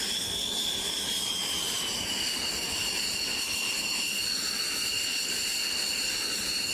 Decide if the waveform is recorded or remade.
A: recorded